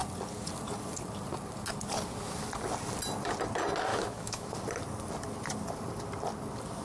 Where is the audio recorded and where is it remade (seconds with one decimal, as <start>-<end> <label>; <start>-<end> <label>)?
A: 0.0-3.9 recorded; 3.9-4.5 remade; 4.5-6.8 recorded